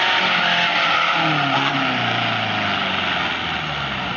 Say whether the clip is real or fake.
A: real